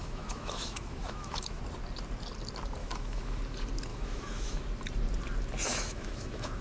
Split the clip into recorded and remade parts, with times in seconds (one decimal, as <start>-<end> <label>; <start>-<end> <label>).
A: 0.0-1.6 remade; 1.6-2.8 recorded; 2.8-3.4 remade; 3.4-3.9 recorded; 3.9-4.6 remade; 4.6-5.7 recorded; 5.7-6.6 remade